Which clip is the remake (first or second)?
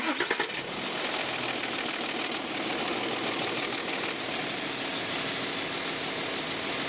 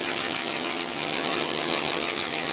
second